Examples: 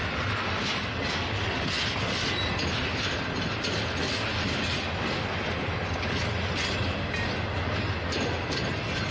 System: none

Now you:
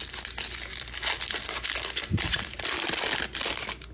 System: none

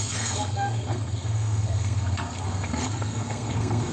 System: codec, SNAC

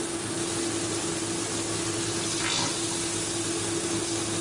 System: none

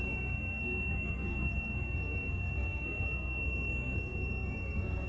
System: codec, SNAC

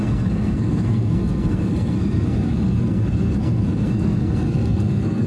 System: codec, SNAC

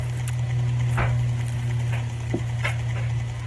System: none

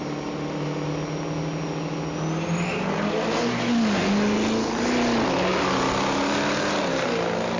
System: none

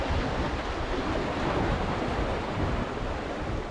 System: vocoder, BigVGAN v2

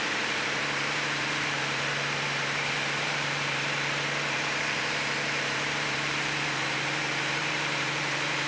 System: vocoder, BigVGAN v2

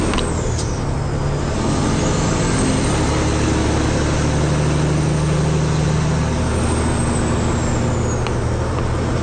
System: none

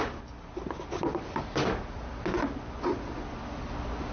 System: none